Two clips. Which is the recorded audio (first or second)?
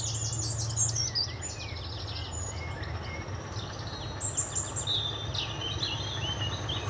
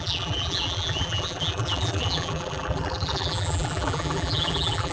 first